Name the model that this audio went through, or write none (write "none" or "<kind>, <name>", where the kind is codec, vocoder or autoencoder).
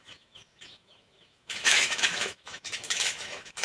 autoencoder, DAC-VAE